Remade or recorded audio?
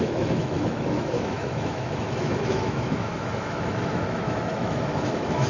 remade